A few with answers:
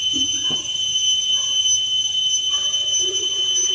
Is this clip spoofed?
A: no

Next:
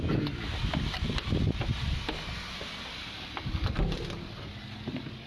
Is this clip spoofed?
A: no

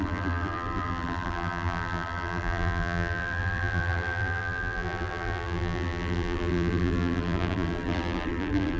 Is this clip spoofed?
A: yes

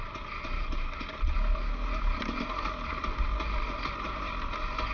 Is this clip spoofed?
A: no